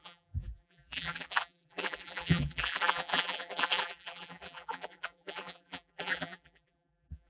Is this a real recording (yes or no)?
no